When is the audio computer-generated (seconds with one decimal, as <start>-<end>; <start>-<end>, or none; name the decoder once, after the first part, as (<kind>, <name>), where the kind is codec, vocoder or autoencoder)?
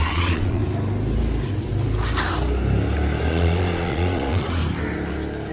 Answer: 0.0-0.6 (vocoder, Vocos); 3.3-4.6